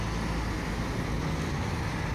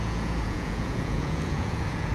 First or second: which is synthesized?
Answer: second